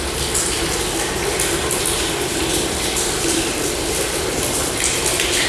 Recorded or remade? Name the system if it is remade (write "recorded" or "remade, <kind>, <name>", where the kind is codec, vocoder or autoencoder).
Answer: recorded